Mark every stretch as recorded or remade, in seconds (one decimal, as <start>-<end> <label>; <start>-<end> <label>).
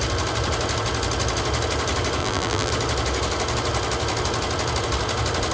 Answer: 0.0-2.2 recorded; 2.2-2.7 remade; 2.7-5.5 recorded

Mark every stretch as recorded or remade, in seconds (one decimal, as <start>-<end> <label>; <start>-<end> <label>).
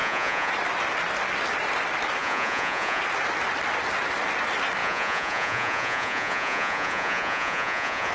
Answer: 0.0-0.5 remade; 0.5-2.2 recorded; 2.2-3.0 remade; 3.0-4.8 recorded; 4.8-8.1 remade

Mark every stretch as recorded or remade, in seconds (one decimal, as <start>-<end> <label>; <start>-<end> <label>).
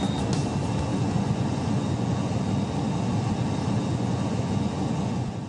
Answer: 0.0-0.9 recorded; 0.9-2.3 remade; 2.3-3.9 recorded; 3.9-5.5 remade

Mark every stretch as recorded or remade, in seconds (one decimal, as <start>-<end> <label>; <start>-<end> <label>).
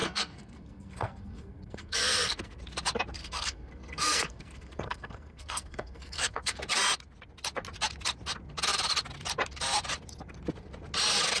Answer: 0.0-2.6 remade; 2.6-3.2 recorded; 3.2-6.6 remade; 6.6-11.4 recorded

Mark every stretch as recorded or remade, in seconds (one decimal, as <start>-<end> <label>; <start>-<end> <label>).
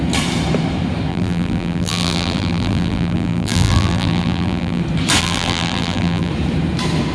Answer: 0.0-1.1 recorded; 1.1-4.8 remade; 4.8-5.2 recorded; 5.2-6.3 remade; 6.3-7.1 recorded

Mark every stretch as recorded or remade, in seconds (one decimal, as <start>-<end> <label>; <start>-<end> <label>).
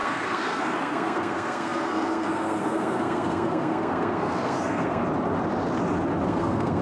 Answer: 0.0-5.0 remade; 5.0-6.3 recorded; 6.3-6.8 remade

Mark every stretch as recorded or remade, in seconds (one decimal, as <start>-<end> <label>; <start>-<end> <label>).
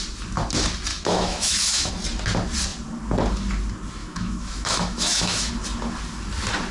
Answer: 0.0-0.9 recorded; 0.9-1.9 remade; 1.9-4.0 recorded; 4.0-5.5 remade; 5.5-6.7 recorded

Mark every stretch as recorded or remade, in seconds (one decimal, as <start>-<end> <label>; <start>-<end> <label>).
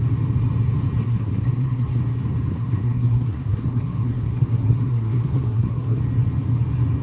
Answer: 0.0-1.0 recorded; 1.0-2.0 remade; 2.0-2.5 recorded; 2.5-6.0 remade; 6.0-7.0 recorded